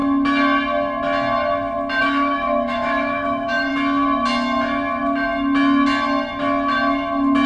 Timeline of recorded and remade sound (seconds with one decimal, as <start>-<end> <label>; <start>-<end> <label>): 0.0-2.0 recorded; 2.0-3.7 remade; 3.7-7.5 recorded